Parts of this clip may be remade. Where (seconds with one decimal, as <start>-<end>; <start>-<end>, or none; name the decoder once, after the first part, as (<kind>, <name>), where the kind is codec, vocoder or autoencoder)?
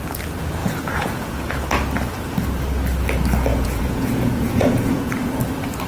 0.6-1.5 (vocoder, Vocos); 3.5-5.1